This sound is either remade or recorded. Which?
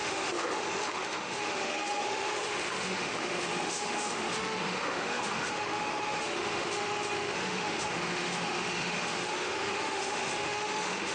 remade